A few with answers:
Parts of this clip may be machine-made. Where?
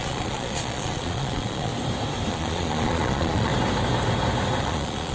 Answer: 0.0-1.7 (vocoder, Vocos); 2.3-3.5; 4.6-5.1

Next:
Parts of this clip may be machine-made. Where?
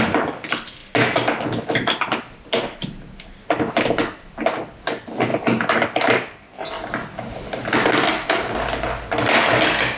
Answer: none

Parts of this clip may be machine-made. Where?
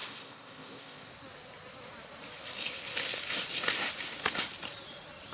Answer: 0.0-1.1 (codec, ZipCodec)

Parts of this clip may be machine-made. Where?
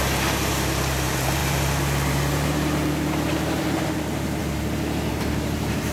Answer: 0.0-4.4 (vocoder, BigVGAN v2); 5.1-5.9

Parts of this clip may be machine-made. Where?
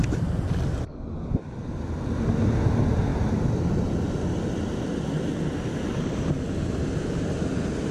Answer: none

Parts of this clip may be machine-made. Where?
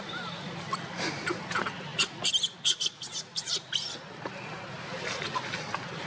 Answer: none